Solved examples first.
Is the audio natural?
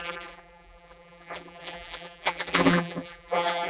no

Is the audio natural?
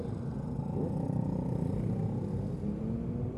yes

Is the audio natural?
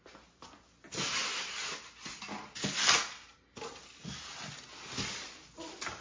yes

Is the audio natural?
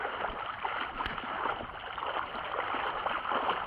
yes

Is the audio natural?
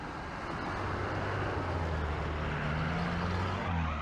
yes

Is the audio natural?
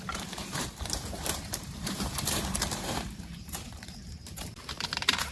no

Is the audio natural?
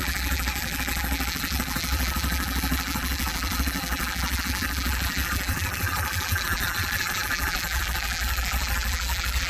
no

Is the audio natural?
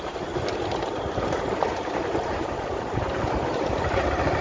no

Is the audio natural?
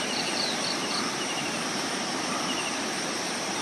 no